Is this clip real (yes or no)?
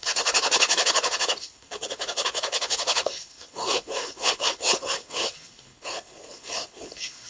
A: no